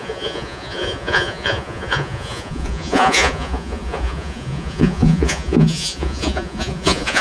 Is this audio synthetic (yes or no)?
yes